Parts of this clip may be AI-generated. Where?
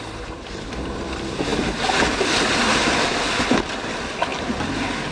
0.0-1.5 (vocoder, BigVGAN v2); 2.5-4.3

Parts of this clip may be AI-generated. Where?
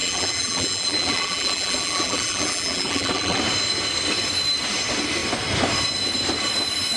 0.0-3.4 (vocoder, BigVGAN v2)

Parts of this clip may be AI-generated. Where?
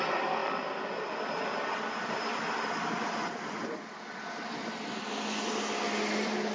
0.0-6.5 (vocoder, BigVGAN v2)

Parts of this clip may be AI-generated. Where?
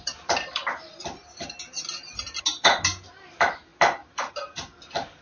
0.0-0.6 (vocoder, BigVGAN v2); 3.1-5.2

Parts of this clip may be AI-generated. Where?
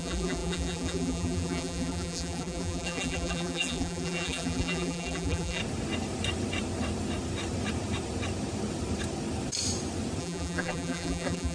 0.0-5.6 (vocoder, BigVGAN v2); 10.2-11.5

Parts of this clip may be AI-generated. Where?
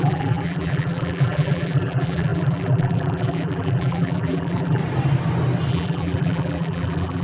0.0-4.8 (vocoder, BigVGAN v2); 5.7-7.2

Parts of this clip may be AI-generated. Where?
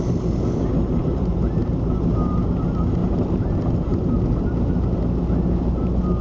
1.0-2.5 (vocoder, BigVGAN v2); 3.0-3.5; 3.9-5.0